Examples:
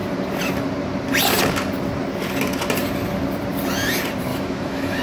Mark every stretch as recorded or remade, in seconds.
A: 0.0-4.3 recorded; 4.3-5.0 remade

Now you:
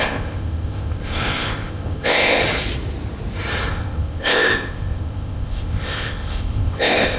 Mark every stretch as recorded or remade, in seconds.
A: 0.0-2.4 remade; 2.4-3.7 recorded; 3.7-7.2 remade

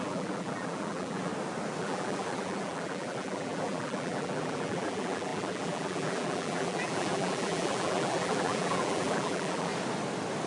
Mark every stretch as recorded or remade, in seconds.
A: 0.0-1.3 remade; 1.3-1.8 recorded; 1.8-9.7 remade; 9.7-10.5 recorded

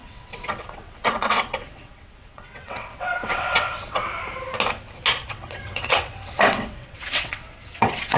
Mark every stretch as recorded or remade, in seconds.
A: 0.0-4.0 remade; 4.0-5.3 recorded; 5.3-8.2 remade

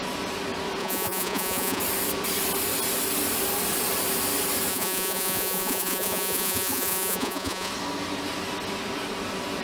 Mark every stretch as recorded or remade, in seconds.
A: 0.0-0.8 recorded; 0.8-1.8 remade; 1.8-4.7 recorded; 4.7-7.7 remade; 7.7-9.6 recorded

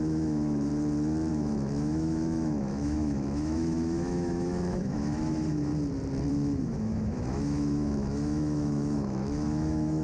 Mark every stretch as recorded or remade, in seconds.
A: 0.0-0.7 remade; 0.7-1.3 recorded; 1.3-5.7 remade; 5.7-6.3 recorded; 6.3-10.0 remade

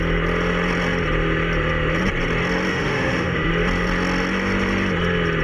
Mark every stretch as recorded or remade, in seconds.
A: 0.0-2.7 recorded; 2.7-3.5 remade; 3.5-5.4 recorded

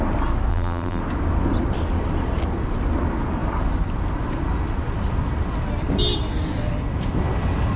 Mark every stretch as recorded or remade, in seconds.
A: 0.0-0.5 recorded; 0.5-1.0 remade; 1.0-7.8 recorded